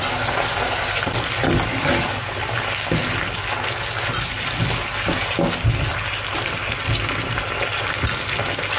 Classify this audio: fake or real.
real